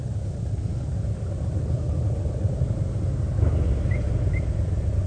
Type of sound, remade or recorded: recorded